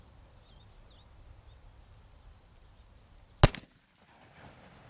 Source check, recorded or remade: recorded